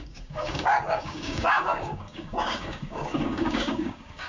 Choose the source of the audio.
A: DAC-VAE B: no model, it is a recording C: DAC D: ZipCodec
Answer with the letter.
C